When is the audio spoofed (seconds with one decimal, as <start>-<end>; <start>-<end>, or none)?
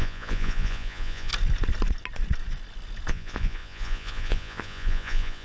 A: 0.0-1.3; 3.1-5.4